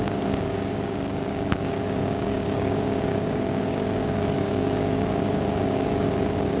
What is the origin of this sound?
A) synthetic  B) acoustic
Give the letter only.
A